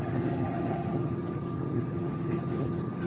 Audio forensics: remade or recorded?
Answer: remade